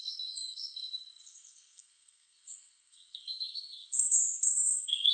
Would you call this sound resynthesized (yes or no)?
yes